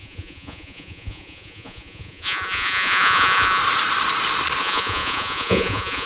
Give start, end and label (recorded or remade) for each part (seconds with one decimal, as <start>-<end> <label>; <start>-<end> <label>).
0.0-3.6 remade; 3.6-4.6 recorded; 4.6-6.1 remade